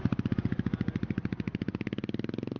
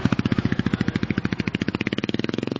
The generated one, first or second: second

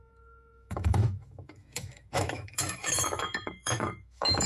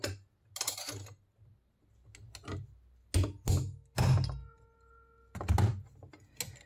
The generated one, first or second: first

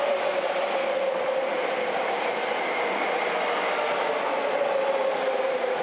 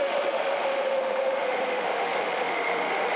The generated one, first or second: second